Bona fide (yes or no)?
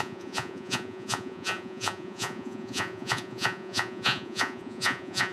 no